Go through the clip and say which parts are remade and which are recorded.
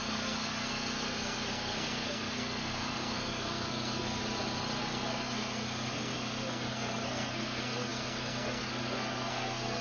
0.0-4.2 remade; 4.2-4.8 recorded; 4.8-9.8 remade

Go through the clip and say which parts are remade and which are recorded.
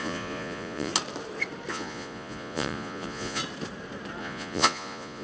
0.0-0.9 remade; 0.9-1.7 recorded; 1.7-3.4 remade; 3.4-4.2 recorded; 4.2-5.2 remade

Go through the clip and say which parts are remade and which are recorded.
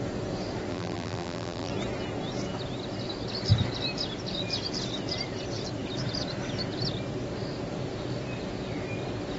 0.0-0.7 recorded; 0.7-1.7 remade; 1.7-9.4 recorded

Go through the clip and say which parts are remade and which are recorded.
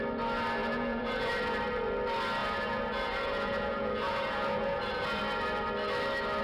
0.0-0.6 recorded; 0.6-1.3 remade; 1.3-2.4 recorded; 2.4-5.2 remade; 5.2-6.4 recorded